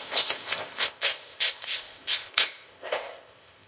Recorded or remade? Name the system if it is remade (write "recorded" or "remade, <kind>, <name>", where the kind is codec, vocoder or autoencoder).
remade, codec, ZipCodec